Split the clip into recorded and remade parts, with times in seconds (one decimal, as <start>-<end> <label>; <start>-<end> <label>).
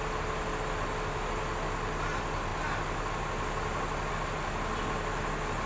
0.0-5.7 recorded